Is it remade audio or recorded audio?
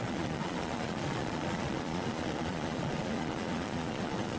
remade